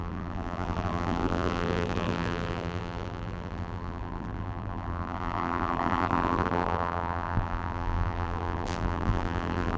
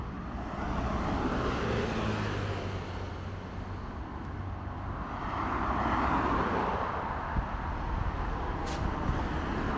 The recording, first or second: second